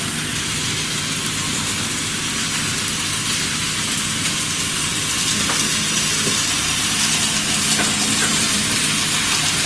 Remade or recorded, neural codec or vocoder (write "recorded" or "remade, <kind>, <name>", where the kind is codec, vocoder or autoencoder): recorded